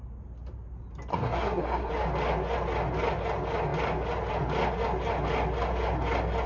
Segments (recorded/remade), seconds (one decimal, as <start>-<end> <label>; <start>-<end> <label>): 0.0-1.1 recorded; 1.1-1.9 remade; 1.9-6.5 recorded